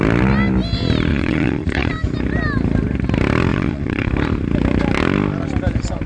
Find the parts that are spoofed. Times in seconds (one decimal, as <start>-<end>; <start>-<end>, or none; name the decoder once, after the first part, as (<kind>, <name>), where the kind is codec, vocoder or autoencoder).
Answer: 1.1-1.9 (vocoder, Vocos); 3.5-4.1